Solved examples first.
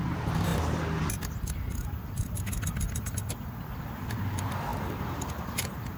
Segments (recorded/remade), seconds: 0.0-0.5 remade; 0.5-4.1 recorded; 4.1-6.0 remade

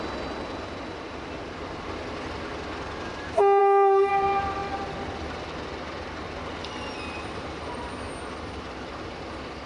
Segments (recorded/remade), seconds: 0.0-3.6 recorded; 3.6-4.1 remade; 4.1-9.7 recorded

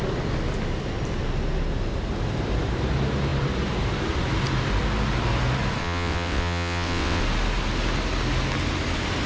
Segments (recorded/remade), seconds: 0.0-5.8 recorded; 5.8-7.2 remade; 7.2-9.3 recorded

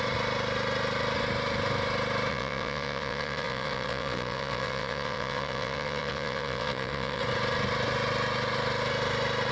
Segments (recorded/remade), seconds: 0.0-2.3 recorded; 2.3-7.2 remade; 7.2-9.5 recorded